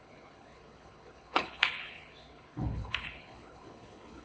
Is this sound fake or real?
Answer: fake